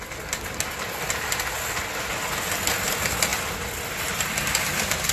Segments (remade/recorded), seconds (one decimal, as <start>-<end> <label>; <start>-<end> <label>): 0.0-5.1 recorded